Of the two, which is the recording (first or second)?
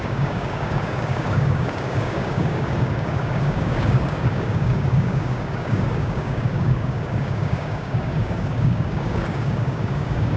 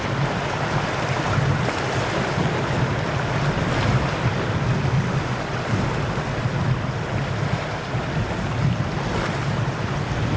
second